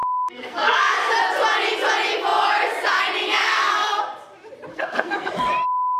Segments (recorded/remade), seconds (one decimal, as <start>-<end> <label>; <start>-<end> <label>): 0.0-1.1 remade; 1.1-3.4 recorded; 3.4-4.0 remade; 4.0-4.7 recorded; 4.7-5.3 remade; 5.3-6.0 recorded